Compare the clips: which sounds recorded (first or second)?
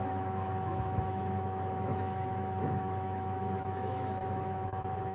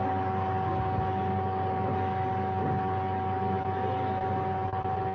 second